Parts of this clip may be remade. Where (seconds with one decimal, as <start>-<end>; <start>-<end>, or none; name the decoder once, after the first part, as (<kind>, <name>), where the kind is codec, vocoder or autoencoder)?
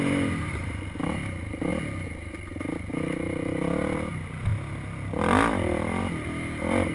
none